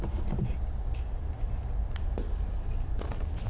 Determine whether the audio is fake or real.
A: real